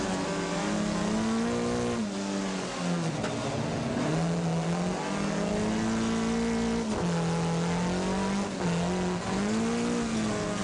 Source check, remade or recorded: recorded